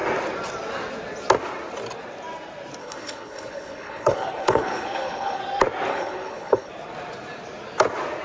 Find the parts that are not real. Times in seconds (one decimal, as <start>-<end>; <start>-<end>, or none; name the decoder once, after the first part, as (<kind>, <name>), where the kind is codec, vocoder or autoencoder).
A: 2.8-5.4 (codec, HILCodec); 5.9-6.7